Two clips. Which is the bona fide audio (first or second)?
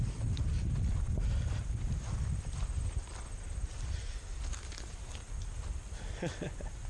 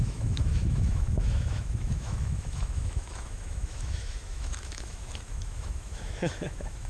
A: first